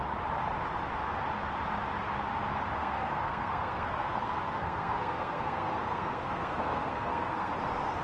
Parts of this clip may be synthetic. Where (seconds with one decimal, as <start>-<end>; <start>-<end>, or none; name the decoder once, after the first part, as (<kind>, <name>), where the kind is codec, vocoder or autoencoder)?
2.8-7.5 (codec, SNAC)

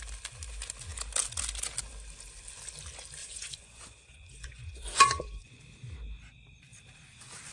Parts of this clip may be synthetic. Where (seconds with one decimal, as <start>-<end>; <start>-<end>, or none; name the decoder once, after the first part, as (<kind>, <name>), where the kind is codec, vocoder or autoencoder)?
3.2-5.6 (vocoder, Vocos)

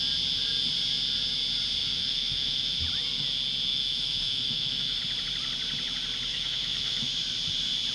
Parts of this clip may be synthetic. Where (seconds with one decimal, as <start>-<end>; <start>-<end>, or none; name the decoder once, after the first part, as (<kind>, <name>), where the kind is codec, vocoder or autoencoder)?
1.8-2.8 (autoencoder, DAC-VAE); 3.7-5.0; 6.3-7.1